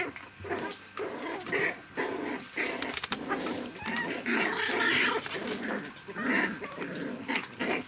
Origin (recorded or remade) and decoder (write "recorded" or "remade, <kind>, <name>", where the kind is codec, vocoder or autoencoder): recorded